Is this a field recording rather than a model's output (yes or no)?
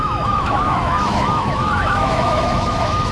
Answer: no